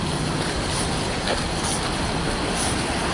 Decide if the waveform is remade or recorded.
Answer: recorded